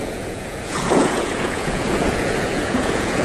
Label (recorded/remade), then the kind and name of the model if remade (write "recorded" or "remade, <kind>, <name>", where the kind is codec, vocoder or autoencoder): remade, vocoder, Vocos